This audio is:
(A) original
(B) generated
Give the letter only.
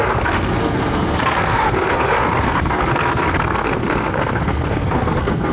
B